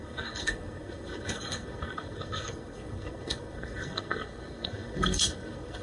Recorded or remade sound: remade